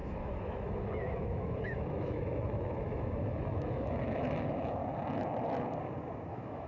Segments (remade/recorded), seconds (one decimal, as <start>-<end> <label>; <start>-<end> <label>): 0.0-4.8 remade; 4.8-6.3 recorded; 6.3-6.7 remade